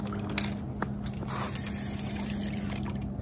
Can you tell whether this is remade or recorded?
recorded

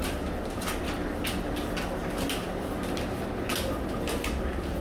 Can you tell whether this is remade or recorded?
recorded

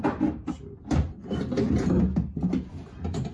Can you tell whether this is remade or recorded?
recorded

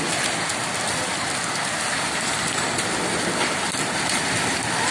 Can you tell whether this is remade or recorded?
recorded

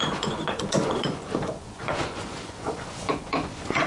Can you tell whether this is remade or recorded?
remade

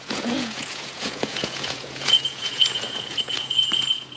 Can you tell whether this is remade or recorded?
remade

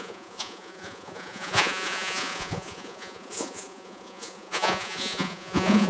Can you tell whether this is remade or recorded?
remade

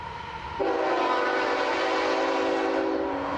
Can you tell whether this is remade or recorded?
recorded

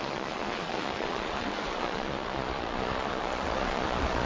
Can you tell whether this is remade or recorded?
remade